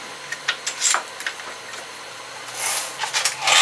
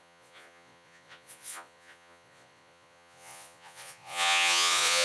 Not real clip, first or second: second